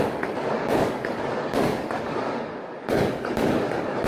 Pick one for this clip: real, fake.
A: fake